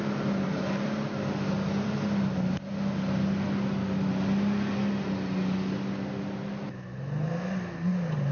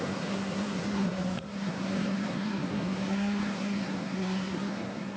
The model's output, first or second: second